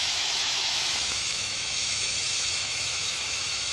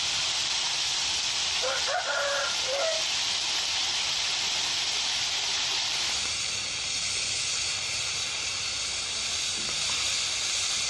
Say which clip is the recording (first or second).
second